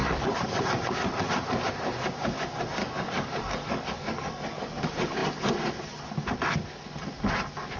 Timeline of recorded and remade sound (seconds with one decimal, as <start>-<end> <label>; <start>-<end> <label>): 0.0-0.6 remade; 0.6-2.8 recorded; 2.8-4.7 remade; 4.7-7.8 recorded